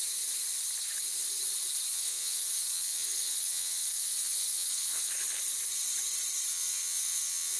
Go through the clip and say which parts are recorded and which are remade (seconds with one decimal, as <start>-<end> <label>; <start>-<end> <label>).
0.0-1.9 recorded; 1.9-5.1 remade; 5.1-6.5 recorded; 6.5-7.6 remade